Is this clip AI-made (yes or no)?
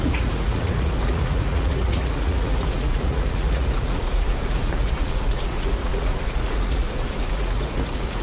yes